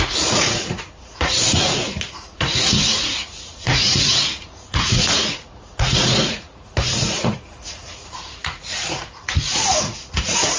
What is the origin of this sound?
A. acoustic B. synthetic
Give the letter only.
B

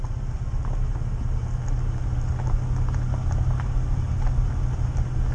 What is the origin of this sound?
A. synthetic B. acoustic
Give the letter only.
B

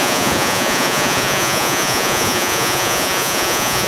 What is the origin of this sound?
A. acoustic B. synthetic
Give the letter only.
B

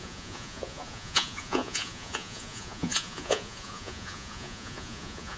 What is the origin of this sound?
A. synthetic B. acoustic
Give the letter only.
A